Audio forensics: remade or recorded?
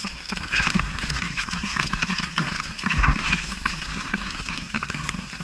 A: remade